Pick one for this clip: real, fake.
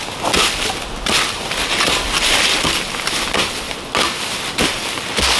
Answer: real